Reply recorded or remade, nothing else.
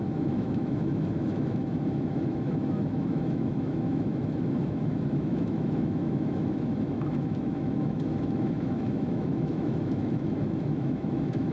remade